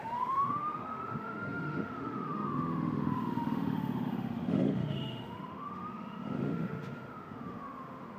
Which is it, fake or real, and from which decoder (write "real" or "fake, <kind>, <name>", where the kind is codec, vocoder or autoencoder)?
fake, autoencoder, DAC-VAE